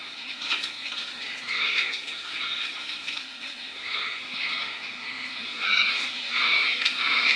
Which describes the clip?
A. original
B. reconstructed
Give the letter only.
B